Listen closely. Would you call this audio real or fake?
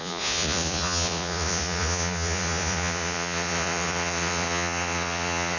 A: fake